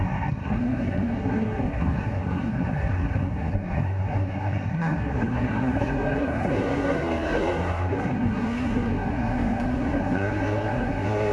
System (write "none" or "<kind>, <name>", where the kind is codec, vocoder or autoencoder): codec, SNAC